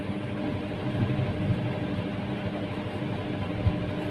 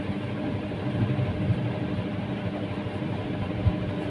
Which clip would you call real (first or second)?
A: first